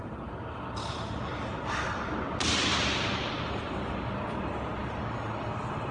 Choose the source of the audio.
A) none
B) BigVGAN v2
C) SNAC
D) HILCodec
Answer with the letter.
A